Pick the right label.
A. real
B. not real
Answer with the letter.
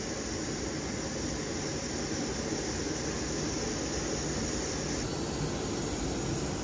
A